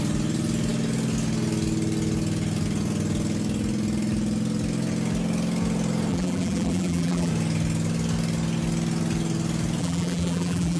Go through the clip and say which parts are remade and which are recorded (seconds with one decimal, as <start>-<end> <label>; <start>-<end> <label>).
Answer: 0.0-6.1 recorded; 6.1-7.3 remade; 7.3-9.8 recorded; 9.8-10.8 remade